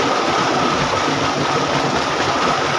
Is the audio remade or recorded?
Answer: recorded